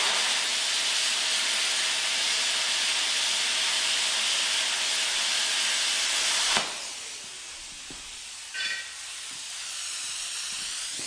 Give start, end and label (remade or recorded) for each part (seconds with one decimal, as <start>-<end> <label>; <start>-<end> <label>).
0.0-11.1 recorded